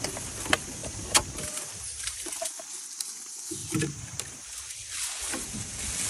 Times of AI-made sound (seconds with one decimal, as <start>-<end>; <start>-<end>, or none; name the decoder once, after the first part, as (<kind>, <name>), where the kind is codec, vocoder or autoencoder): 0.8-2.4 (vocoder, BigVGAN v2); 3.6-5.6